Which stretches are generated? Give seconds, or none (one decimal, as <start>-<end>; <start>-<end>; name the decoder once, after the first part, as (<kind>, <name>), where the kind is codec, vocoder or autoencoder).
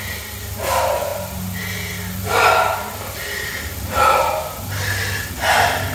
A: none